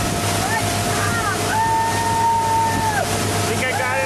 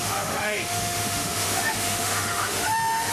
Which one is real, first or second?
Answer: first